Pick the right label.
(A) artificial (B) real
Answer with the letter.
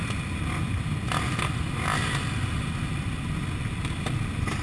B